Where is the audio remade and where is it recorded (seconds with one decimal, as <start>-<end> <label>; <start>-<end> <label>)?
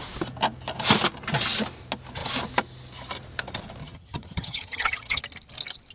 0.0-3.8 recorded; 3.8-5.2 remade; 5.2-5.9 recorded